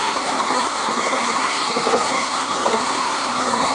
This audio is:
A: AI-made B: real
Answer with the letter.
A